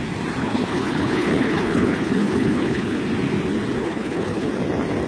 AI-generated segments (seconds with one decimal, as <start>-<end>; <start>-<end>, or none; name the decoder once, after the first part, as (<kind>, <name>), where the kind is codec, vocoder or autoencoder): 0.4-3.0 (codec, HILCodec); 3.8-4.5